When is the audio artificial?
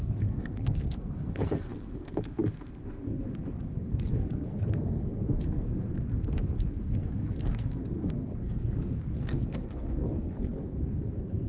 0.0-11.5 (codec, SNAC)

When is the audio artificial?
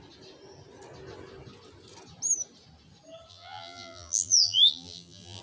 3.3-5.4 (vocoder, BigVGAN v2)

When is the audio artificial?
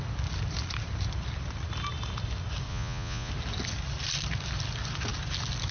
2.7-3.3 (vocoder, Vocos)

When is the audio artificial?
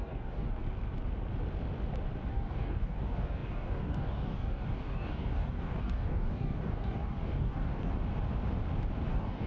0.0-0.6 (codec, DAC); 2.3-7.9; 9.1-9.5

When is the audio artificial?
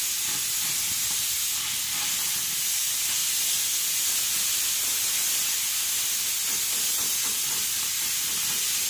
none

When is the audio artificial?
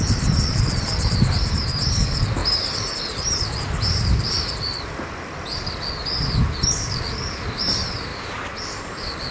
0.0-9.3 (vocoder, BigVGAN v2)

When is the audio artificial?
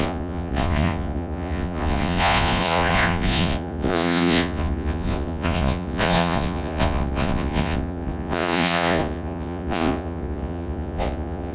0.0-11.5 (vocoder, Vocos)